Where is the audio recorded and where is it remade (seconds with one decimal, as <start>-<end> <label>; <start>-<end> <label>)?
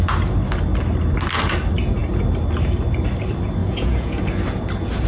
0.0-3.6 recorded; 3.6-4.2 remade; 4.2-5.1 recorded